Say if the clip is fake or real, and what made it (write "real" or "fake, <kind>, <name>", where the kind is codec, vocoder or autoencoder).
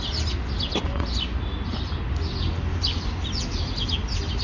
real